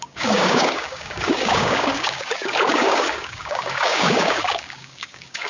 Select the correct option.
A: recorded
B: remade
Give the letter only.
B